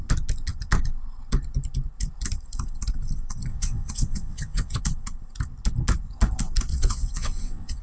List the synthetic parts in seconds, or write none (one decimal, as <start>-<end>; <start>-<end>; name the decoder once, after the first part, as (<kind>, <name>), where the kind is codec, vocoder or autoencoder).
3.5-4.8 (vocoder, WaveNeXt); 6.7-7.8